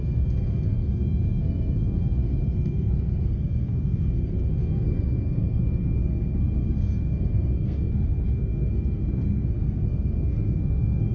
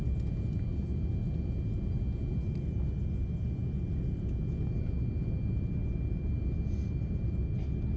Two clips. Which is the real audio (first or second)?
second